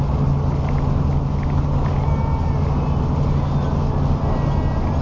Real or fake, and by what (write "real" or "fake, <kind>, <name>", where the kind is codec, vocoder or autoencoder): real